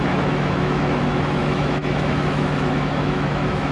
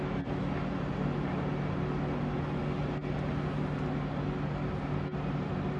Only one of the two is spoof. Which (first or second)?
first